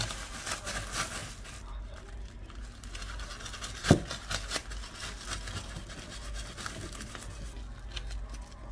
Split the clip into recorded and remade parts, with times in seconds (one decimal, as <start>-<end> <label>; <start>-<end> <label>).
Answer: 0.0-1.2 recorded; 1.2-3.3 remade; 3.3-8.7 recorded